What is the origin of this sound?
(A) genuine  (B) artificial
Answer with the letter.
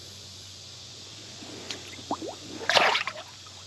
B